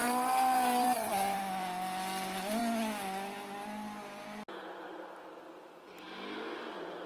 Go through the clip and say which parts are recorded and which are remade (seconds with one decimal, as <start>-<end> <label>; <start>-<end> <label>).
0.0-1.4 remade; 1.4-7.1 recorded